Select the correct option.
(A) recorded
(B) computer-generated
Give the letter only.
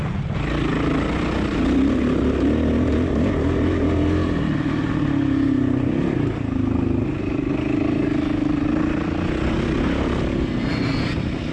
A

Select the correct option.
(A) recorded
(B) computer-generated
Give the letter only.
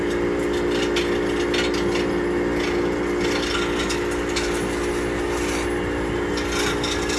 A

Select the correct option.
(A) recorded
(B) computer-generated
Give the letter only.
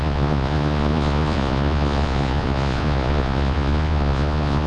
B